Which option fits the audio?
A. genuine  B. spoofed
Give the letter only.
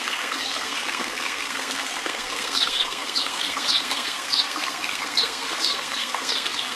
B